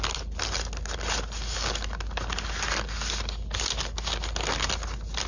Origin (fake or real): real